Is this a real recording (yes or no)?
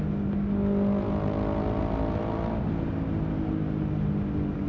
yes